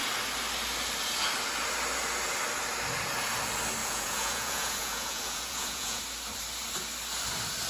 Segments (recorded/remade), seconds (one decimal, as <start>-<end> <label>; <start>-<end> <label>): 0.0-3.8 recorded; 3.8-6.0 remade; 6.0-7.7 recorded